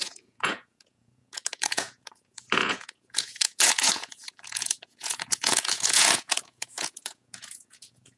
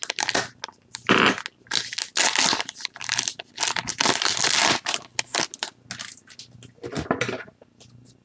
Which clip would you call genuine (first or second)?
second